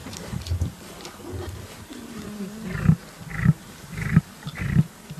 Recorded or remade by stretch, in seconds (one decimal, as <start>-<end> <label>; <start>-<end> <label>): 0.0-0.5 remade; 0.5-5.2 recorded